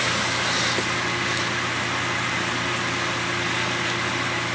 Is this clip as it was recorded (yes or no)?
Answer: yes